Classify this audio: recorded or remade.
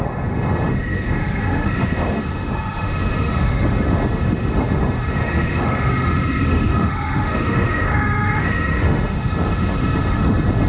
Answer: remade